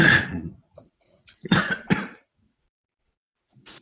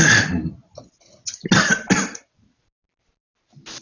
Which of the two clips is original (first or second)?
second